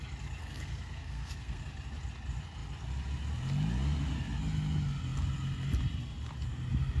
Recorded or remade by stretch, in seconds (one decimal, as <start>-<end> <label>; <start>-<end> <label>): 0.0-0.4 recorded; 0.4-1.6 remade; 1.6-7.0 recorded